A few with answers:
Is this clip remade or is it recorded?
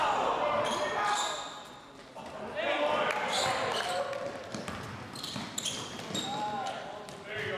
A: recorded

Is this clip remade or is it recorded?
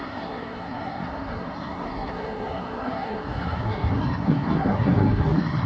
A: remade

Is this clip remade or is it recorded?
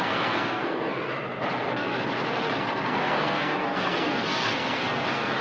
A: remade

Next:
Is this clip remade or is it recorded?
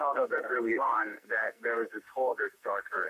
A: remade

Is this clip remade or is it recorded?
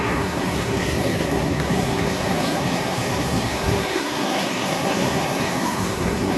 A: remade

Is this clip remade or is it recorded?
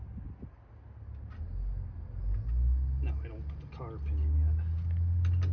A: recorded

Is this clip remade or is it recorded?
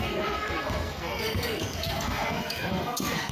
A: remade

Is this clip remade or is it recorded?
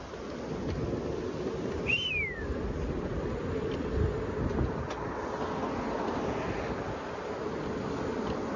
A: recorded